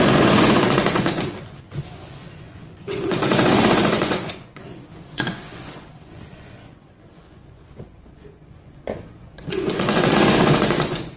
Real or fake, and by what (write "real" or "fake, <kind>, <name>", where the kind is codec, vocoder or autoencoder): fake, vocoder, Vocos